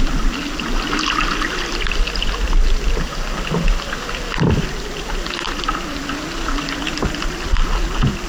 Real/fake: real